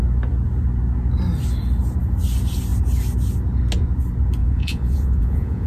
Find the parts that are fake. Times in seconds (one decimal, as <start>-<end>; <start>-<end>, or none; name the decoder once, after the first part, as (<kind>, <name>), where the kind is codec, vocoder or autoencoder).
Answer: 4.4-5.7 (vocoder, Vocos)